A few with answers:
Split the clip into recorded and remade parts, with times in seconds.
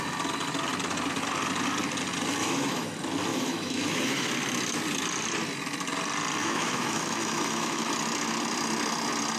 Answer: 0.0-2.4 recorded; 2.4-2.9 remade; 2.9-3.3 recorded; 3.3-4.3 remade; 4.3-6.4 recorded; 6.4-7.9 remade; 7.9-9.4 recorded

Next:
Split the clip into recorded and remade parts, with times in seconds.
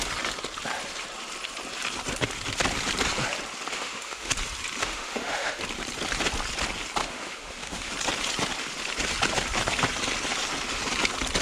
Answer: 0.0-3.7 recorded; 3.7-4.3 remade; 4.3-4.8 recorded; 4.8-5.6 remade; 5.6-7.0 recorded; 7.0-7.9 remade; 7.9-11.4 recorded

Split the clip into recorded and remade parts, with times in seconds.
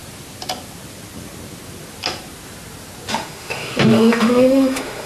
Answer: 0.0-3.1 recorded; 3.1-5.1 remade